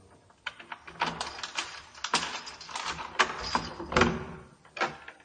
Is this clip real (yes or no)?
yes